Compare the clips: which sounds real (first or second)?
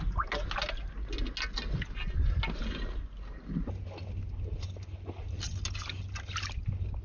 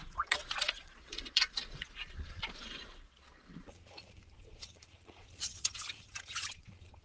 first